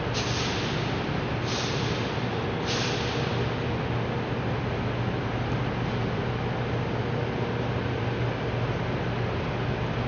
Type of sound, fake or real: real